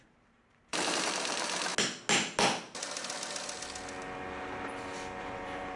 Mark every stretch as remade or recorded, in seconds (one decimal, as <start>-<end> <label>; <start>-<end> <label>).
0.0-1.7 remade; 1.7-5.2 recorded; 5.2-5.8 remade